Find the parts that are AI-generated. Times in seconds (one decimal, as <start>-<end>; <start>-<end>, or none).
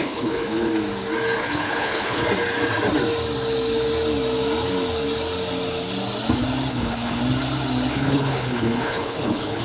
0.0-0.7; 1.4-2.2; 6.7-7.2; 7.9-9.6